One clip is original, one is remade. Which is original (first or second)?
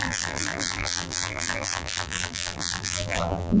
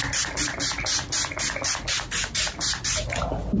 second